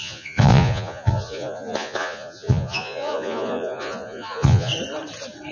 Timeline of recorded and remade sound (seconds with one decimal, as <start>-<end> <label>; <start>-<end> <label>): 0.0-4.7 remade; 4.7-5.5 recorded